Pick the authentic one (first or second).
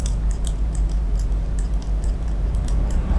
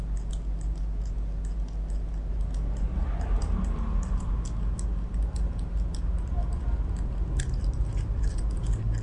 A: second